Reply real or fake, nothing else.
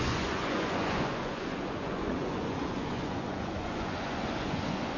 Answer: fake